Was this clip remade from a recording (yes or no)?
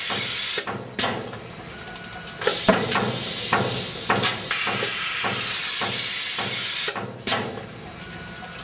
no